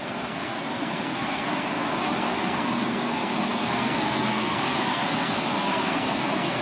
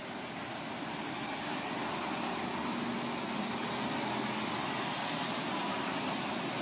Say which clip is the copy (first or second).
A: first